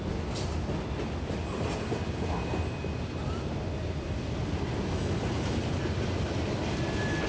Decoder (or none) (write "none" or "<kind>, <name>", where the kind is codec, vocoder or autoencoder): none